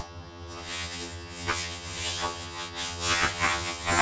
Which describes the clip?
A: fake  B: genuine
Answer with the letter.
A